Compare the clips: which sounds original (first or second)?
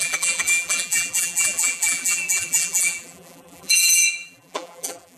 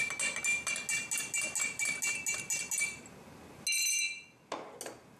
second